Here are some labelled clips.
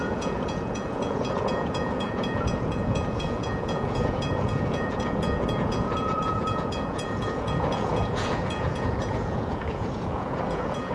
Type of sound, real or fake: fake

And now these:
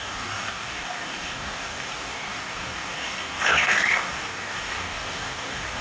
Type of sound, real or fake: fake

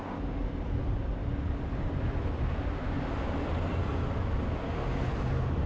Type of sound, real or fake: real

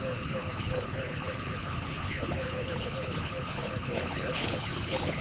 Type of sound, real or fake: fake